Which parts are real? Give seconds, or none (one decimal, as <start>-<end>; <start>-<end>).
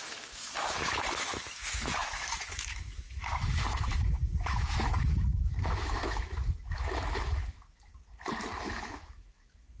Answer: 7.9-8.4